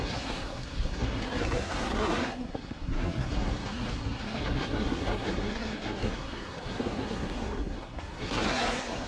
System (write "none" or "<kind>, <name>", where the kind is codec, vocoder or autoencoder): codec, SNAC